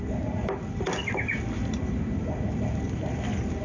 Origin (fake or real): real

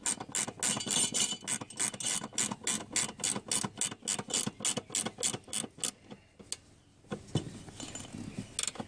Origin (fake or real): real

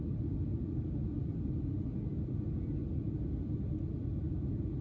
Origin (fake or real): real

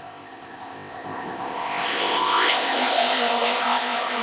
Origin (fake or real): fake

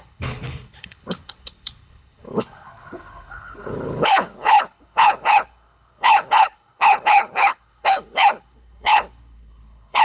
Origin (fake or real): fake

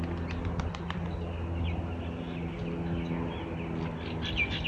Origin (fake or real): real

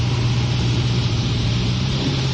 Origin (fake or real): fake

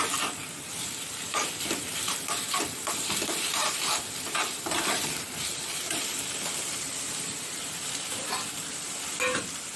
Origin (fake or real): fake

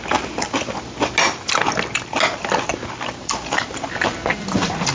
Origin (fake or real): real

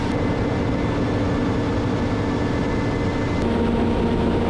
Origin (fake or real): real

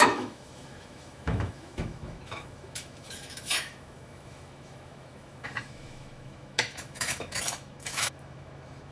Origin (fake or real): fake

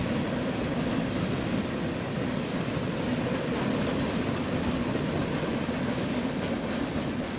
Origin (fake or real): real